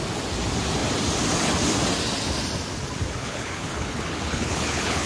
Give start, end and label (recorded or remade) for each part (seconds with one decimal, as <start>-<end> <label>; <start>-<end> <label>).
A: 0.0-3.2 recorded; 3.2-5.1 remade